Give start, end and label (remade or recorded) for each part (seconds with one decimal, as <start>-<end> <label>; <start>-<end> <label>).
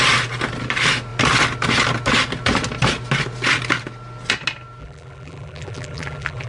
0.0-4.8 recorded; 4.8-6.5 remade